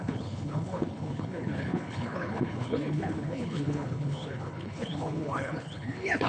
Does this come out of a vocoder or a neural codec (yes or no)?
yes